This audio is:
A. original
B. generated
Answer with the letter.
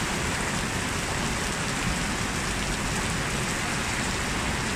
A